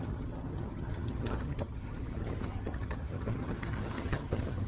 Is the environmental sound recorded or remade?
remade